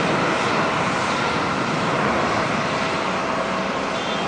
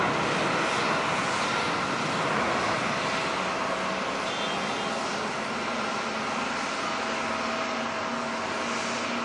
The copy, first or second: first